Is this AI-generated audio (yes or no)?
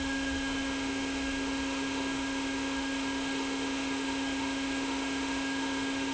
yes